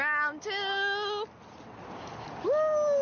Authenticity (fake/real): real